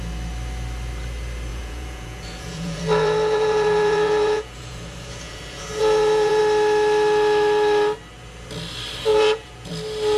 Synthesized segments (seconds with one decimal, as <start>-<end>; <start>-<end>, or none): 1.5-6.4; 9.1-9.7